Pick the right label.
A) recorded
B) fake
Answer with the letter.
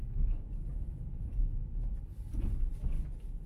A